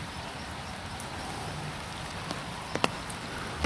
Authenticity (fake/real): real